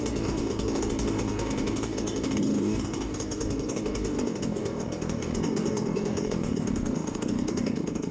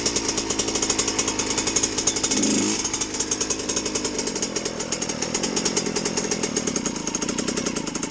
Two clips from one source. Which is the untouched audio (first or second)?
second